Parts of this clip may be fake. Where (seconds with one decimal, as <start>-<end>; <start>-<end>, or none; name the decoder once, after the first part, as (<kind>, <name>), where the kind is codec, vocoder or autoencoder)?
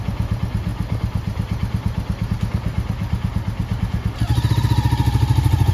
none